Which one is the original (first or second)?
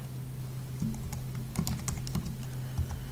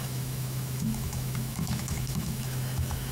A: first